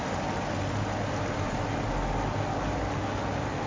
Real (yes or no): yes